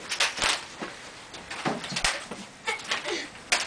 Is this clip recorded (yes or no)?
yes